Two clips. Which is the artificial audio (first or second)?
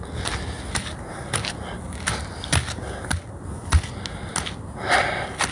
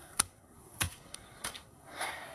second